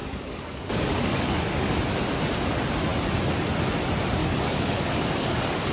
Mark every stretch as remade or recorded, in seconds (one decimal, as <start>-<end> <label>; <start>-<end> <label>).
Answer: 0.0-1.8 remade; 1.8-4.2 recorded; 4.2-5.7 remade